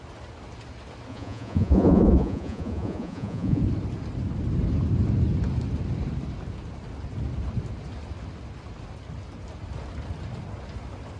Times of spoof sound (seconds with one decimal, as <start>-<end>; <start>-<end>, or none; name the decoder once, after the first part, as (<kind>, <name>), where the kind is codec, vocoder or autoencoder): 1.1-3.6 (vocoder, Vocos)